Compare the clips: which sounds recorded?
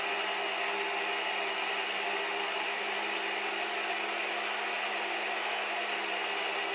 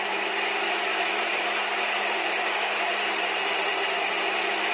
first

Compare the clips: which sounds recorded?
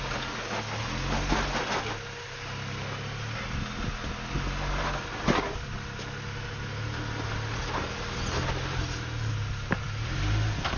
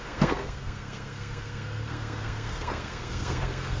first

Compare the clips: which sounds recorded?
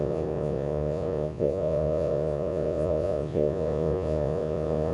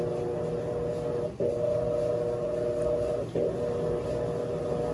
second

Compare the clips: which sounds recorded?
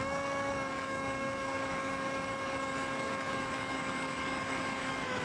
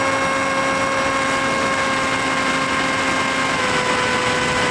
second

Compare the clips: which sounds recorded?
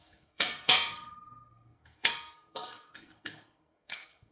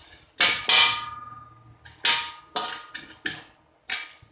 second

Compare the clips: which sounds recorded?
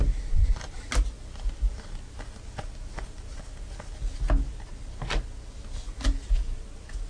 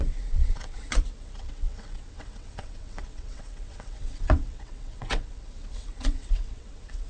first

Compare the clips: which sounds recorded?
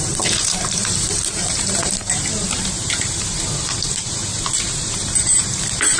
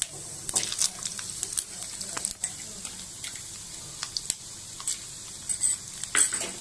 second